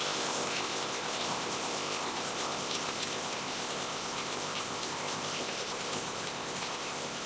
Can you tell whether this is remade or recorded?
remade